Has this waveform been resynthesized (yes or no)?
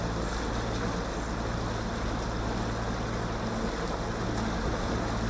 no